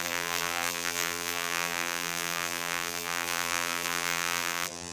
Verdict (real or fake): fake